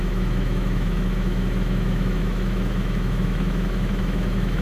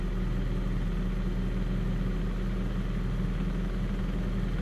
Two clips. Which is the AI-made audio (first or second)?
first